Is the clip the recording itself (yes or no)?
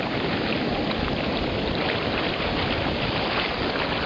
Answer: yes